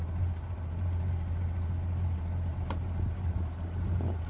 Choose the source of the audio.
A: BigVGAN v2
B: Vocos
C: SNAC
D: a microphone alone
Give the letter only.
D